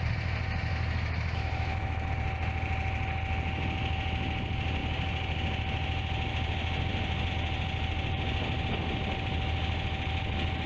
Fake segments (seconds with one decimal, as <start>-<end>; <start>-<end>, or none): 0.7-2.1